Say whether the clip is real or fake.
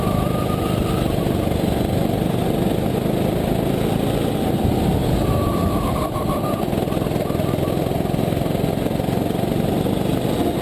real